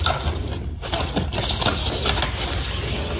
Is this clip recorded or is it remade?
recorded